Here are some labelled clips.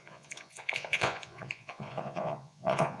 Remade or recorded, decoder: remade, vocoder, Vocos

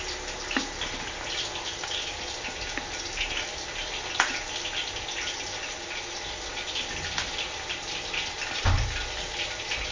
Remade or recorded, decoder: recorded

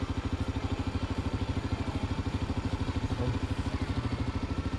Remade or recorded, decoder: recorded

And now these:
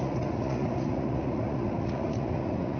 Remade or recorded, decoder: remade, vocoder, Vocos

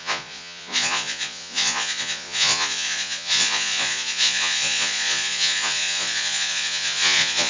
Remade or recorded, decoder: remade, vocoder, Vocos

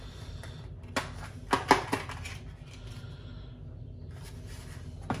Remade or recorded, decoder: recorded